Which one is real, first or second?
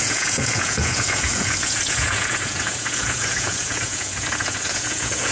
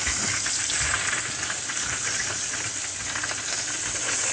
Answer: second